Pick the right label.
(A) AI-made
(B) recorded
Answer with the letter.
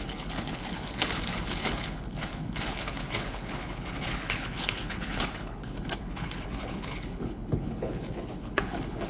A